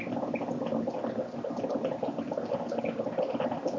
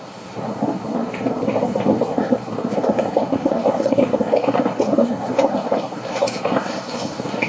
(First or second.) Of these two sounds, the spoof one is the second